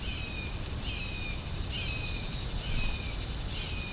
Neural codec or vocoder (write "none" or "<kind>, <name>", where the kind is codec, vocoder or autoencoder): none